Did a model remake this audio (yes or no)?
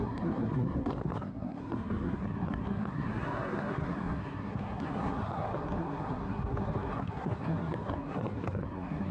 yes